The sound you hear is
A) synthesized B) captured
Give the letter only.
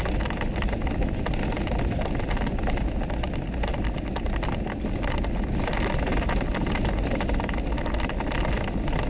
B